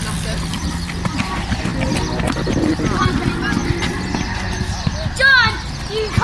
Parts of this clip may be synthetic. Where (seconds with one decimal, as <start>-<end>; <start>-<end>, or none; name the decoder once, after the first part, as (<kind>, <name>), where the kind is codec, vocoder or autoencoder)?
none